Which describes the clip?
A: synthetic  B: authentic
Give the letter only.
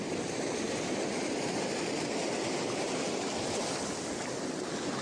B